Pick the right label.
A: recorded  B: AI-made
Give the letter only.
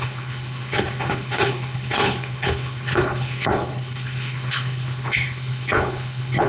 B